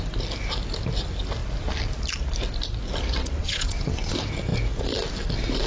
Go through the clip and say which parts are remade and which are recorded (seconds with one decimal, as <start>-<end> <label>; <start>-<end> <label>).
0.0-3.2 recorded; 3.2-4.1 remade; 4.1-5.7 recorded